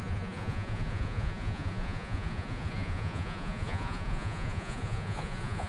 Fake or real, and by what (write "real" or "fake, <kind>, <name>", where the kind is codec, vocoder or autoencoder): fake, vocoder, Vocos